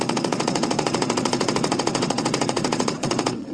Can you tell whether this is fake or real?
fake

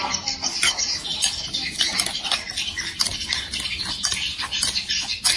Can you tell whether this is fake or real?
real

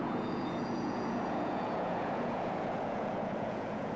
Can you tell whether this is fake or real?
fake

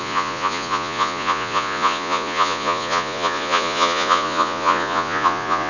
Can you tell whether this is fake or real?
fake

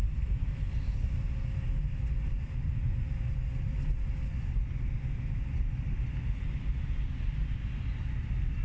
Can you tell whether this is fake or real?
real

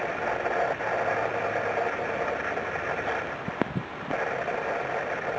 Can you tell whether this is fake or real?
real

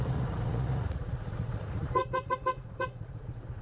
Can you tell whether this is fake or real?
fake